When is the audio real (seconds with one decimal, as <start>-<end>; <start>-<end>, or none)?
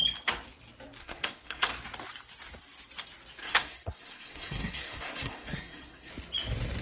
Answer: 0.0-1.0; 1.7-3.4; 6.1-6.8